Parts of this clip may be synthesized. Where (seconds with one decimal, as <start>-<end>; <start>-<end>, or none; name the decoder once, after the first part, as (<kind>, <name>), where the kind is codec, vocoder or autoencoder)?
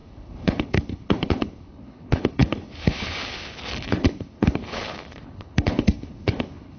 0.0-6.8 (codec, HILCodec)